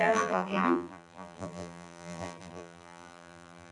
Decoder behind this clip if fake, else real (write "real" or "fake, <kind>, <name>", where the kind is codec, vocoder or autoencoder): fake, vocoder, BigVGAN v2